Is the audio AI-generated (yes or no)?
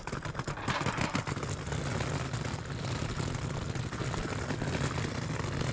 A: no